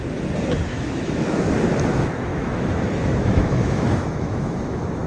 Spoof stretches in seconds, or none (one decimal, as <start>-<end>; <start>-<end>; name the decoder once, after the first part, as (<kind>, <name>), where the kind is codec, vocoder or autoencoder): 0.7-1.5 (autoencoder, DAC-VAE); 2.3-5.1